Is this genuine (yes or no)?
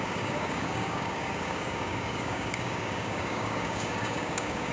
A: no